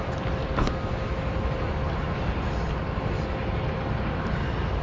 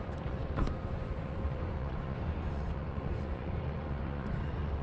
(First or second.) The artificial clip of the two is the second